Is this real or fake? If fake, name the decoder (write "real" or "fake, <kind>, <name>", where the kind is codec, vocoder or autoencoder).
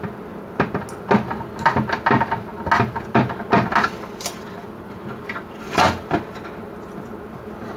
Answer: real